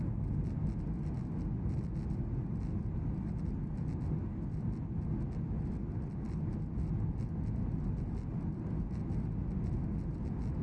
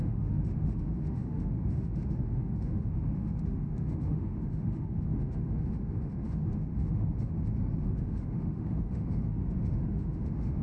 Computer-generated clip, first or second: second